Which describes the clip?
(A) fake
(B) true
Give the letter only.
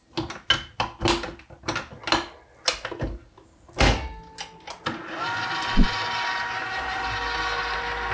B